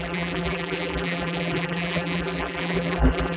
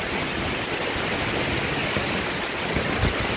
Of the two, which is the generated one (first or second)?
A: first